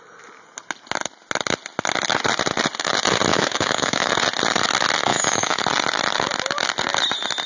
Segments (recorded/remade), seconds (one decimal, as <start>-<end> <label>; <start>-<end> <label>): 0.0-3.3 recorded; 3.3-4.1 remade; 4.1-5.1 recorded; 5.1-5.6 remade; 5.6-7.5 recorded